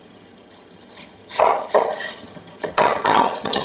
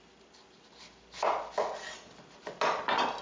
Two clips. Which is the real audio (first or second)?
second